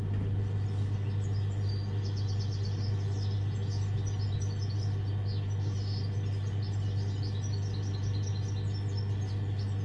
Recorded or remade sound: recorded